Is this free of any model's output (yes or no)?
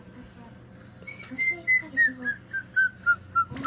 yes